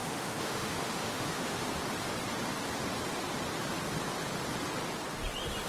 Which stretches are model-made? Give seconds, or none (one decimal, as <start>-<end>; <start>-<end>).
0.0-1.7